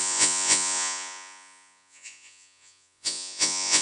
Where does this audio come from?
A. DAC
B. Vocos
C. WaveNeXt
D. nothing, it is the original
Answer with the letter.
B